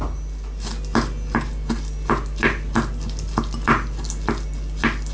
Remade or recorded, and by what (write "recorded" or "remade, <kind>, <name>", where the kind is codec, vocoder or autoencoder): recorded